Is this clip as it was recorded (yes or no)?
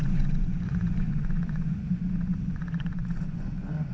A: no